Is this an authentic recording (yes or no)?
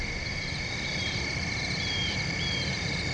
yes